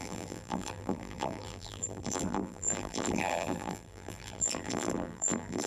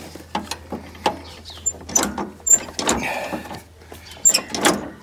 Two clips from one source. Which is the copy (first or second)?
first